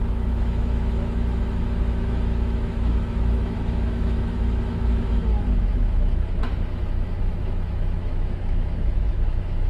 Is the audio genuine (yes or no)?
no